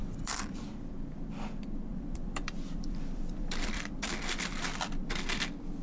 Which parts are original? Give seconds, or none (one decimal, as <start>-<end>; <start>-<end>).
0.7-1.9; 5.1-5.8